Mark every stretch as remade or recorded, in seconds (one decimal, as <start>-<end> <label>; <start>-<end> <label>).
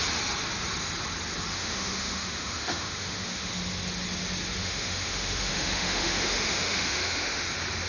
0.0-1.5 recorded; 1.5-3.5 remade; 3.5-4.6 recorded; 4.6-7.5 remade; 7.5-7.9 recorded